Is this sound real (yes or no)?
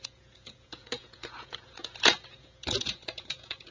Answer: no